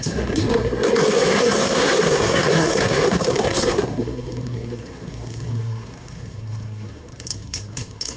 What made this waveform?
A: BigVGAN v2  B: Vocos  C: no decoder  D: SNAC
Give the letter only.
D